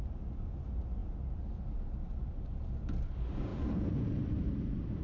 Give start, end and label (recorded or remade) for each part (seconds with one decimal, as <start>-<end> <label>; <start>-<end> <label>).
0.0-3.5 recorded; 3.5-4.1 remade; 4.1-5.0 recorded